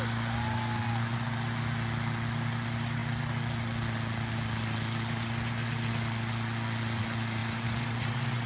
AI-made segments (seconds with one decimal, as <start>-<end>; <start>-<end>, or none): 7.4-8.1